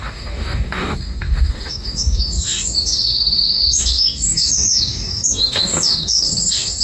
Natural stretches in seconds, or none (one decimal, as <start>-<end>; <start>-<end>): none